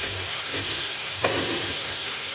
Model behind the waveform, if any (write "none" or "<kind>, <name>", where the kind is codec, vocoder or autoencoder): codec, SNAC